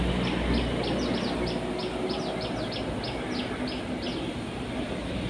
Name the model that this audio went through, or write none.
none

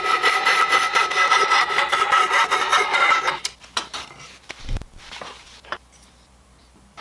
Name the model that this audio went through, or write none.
none